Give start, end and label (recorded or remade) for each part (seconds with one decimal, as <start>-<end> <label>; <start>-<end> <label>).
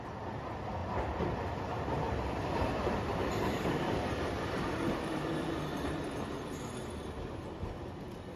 0.0-0.8 recorded; 0.8-5.5 remade; 5.5-8.4 recorded